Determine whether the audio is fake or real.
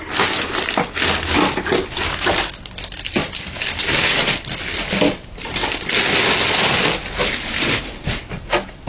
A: real